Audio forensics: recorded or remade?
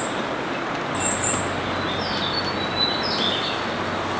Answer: recorded